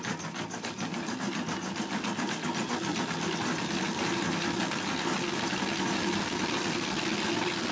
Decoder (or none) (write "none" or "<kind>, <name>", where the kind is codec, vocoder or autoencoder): none